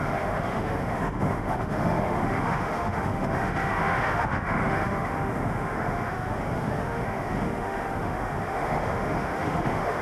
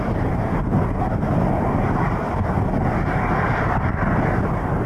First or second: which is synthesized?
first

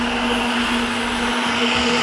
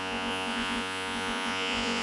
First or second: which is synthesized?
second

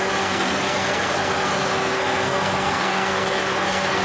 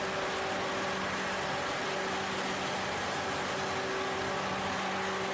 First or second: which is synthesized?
first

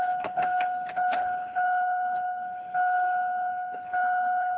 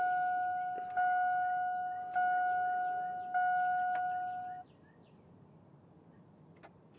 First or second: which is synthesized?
first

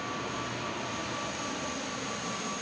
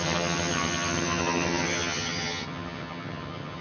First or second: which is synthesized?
second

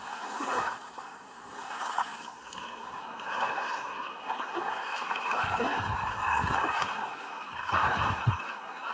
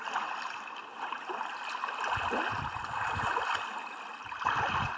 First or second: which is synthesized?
first